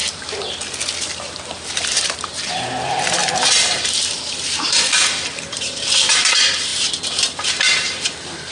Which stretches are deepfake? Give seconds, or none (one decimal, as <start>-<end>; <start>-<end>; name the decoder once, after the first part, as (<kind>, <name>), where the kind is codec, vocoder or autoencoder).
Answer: 1.0-8.5 (vocoder, BigVGAN v2)